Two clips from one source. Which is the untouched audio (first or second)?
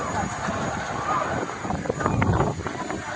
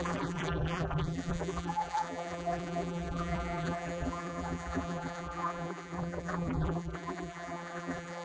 first